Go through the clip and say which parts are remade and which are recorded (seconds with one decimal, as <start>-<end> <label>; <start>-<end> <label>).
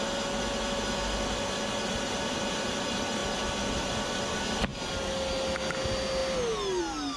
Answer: 0.0-7.2 recorded